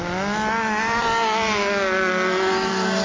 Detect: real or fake real